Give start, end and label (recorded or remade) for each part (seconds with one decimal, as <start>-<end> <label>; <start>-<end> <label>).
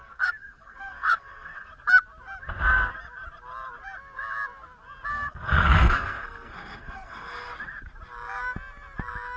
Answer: 0.0-1.7 remade; 1.7-5.1 recorded; 5.1-7.5 remade; 7.5-9.4 recorded